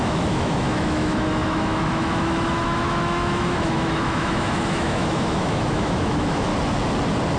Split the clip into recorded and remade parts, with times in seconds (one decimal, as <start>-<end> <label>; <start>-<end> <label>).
0.0-6.5 remade; 6.5-7.4 recorded